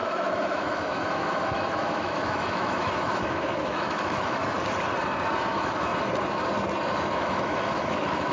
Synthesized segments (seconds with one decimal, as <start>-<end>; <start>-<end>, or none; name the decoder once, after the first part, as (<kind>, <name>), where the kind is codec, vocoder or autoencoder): 0.0-4.4 (autoencoder, DAC-VAE); 5.5-5.9; 7.1-8.3